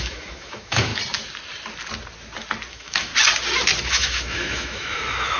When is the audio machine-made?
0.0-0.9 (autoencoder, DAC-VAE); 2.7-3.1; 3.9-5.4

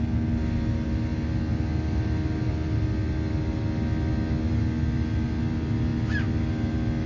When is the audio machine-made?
none

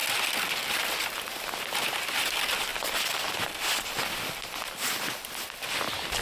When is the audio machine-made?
none